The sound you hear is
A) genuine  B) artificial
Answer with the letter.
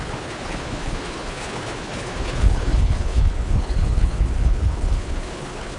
B